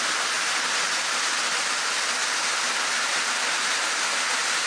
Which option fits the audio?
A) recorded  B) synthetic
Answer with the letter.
A